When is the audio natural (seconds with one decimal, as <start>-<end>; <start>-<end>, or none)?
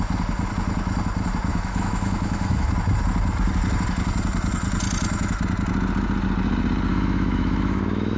0.0-1.5; 2.7-6.9